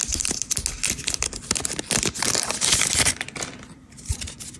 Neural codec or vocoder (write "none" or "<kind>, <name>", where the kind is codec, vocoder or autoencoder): none